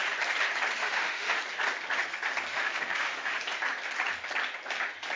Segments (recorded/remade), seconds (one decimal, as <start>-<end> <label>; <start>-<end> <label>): 0.0-0.8 recorded; 0.8-1.4 remade; 1.4-2.5 recorded; 2.5-3.4 remade; 3.4-5.2 recorded